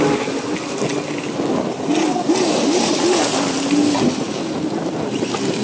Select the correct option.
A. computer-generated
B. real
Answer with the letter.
B